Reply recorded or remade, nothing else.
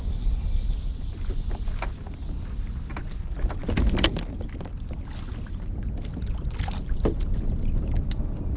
recorded